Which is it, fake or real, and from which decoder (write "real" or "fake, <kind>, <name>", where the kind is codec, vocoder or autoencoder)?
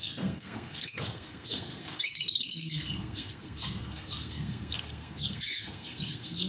fake, codec, SNAC